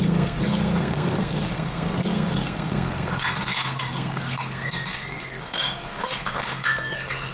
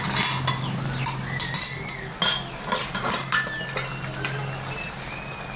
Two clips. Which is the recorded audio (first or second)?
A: second